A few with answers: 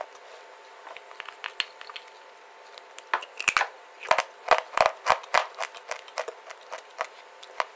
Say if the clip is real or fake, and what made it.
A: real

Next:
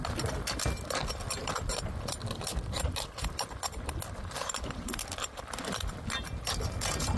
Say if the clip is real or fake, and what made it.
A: real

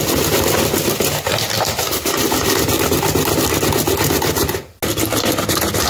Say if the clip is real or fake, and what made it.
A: real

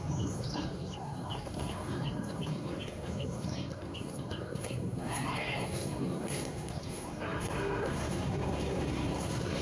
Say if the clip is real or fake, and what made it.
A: fake, codec, SNAC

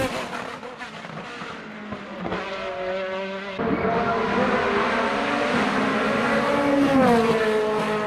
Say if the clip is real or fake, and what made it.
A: real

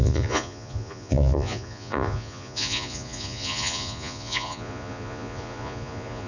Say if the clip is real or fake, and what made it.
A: fake, vocoder, Vocos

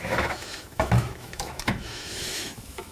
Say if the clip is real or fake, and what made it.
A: fake, autoencoder, DAC-VAE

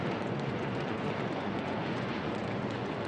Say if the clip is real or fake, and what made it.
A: fake, vocoder, Vocos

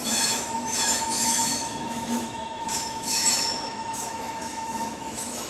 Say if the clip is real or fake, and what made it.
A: fake, autoencoder, DAC-VAE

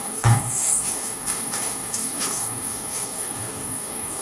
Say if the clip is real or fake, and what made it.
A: fake, codec, DAC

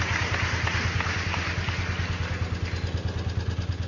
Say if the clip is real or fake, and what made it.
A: real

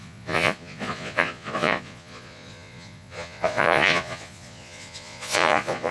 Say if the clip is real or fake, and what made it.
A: fake, vocoder, Vocos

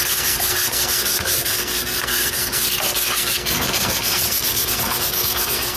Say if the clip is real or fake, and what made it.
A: fake, codec, SNAC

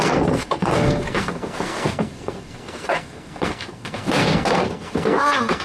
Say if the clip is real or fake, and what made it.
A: fake, codec, SNAC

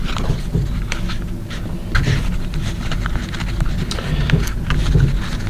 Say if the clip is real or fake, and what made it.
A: real